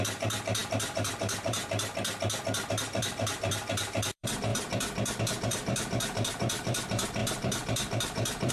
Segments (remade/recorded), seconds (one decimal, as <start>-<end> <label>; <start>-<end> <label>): 0.0-1.6 remade; 1.6-2.7 recorded; 2.7-4.5 remade; 4.5-5.2 recorded; 5.2-8.5 remade